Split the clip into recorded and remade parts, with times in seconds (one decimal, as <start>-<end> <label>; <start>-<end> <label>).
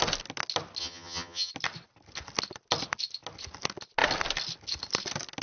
0.0-0.8 recorded; 0.8-1.5 remade; 1.5-5.4 recorded